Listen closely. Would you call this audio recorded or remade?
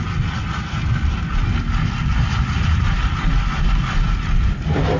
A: recorded